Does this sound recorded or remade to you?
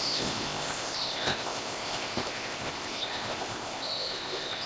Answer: remade